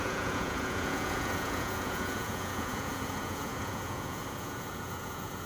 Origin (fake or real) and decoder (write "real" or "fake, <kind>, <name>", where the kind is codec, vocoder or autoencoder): fake, vocoder, Vocos